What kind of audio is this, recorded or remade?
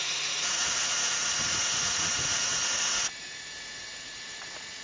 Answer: remade